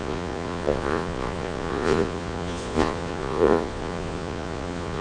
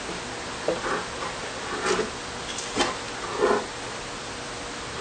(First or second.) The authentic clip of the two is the second